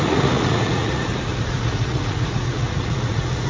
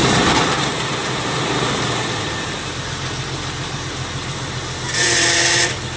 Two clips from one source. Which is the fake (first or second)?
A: first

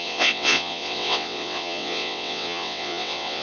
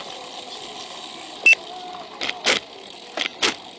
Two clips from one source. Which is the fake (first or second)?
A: first